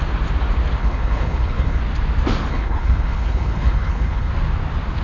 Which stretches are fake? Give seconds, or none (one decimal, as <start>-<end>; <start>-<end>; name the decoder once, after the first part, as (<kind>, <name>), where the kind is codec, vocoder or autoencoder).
0.8-1.8 (codec, HILCodec); 2.5-4.3

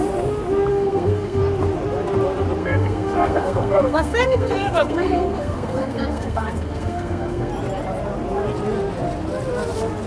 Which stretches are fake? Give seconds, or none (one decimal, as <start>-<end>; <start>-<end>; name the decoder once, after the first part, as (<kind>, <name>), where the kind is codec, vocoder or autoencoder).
0.7-1.4 (codec, SNAC); 2.6-7.5

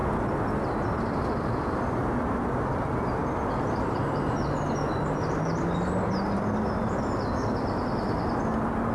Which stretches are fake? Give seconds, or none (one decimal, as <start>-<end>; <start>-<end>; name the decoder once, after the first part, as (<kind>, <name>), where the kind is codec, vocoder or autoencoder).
none

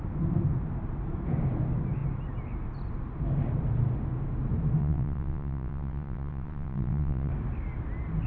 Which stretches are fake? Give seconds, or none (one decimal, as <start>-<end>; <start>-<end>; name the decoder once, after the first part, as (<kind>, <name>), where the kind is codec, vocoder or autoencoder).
4.8-7.3 (vocoder, WaveNeXt)